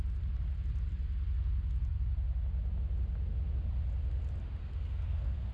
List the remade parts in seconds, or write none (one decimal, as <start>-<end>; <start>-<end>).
4.6-5.5